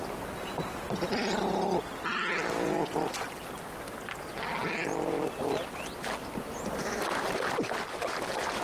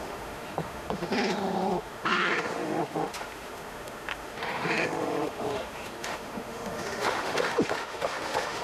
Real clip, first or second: first